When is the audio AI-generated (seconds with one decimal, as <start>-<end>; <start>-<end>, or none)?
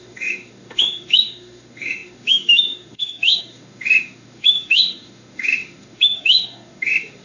0.0-7.2